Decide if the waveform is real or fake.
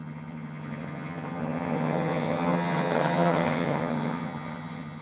fake